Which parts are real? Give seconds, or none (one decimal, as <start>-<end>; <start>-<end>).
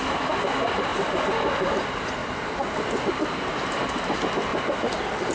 0.0-0.9; 1.7-2.2; 3.8-4.5